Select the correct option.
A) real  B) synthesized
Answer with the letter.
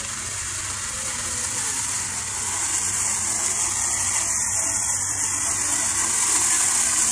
A